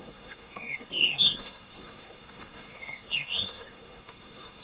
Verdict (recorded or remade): remade